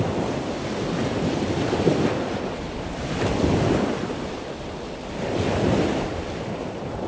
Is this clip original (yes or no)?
no